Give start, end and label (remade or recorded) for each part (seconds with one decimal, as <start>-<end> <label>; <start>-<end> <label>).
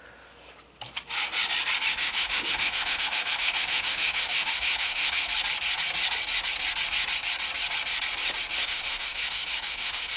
0.0-1.9 recorded; 1.9-5.3 remade; 5.3-8.6 recorded; 8.6-10.2 remade